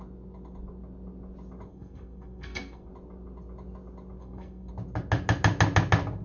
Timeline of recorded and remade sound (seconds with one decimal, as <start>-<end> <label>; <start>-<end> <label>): 0.0-1.7 recorded; 1.7-2.9 remade; 2.9-4.2 recorded; 4.2-4.7 remade; 4.7-6.2 recorded